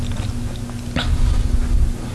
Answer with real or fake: real